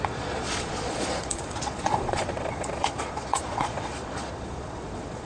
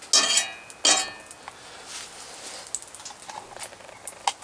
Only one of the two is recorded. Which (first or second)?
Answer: second